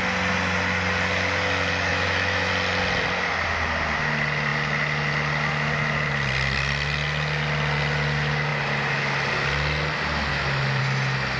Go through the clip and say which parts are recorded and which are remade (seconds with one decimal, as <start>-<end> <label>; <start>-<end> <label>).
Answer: 0.0-1.9 recorded; 1.9-2.5 remade; 2.5-10.3 recorded; 10.3-10.8 remade; 10.8-11.4 recorded